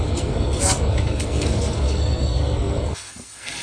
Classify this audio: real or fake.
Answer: fake